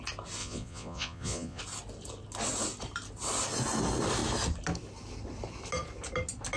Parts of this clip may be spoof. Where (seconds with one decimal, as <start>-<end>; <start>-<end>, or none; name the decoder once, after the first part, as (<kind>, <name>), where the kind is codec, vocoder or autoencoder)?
0.4-1.6 (vocoder, Vocos)